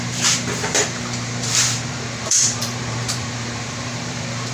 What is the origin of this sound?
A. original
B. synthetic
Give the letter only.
B